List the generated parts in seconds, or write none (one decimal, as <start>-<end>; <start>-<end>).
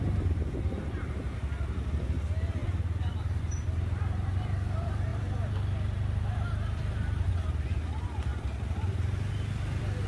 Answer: 0.0-8.3; 9.3-10.1